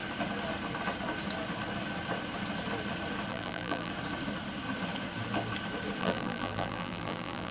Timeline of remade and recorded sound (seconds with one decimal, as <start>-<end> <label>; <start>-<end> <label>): 0.0-3.3 recorded; 3.3-3.9 remade; 3.9-6.0 recorded; 6.0-7.5 remade